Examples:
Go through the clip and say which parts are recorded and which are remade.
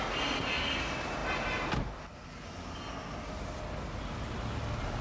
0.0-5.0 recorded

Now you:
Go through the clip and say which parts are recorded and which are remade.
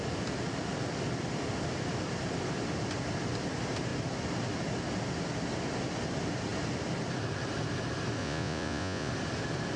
0.0-8.2 recorded; 8.2-9.1 remade; 9.1-9.8 recorded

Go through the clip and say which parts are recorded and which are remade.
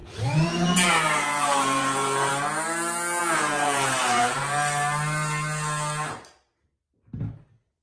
0.0-2.3 remade; 2.3-3.2 recorded; 3.2-4.4 remade; 4.4-7.8 recorded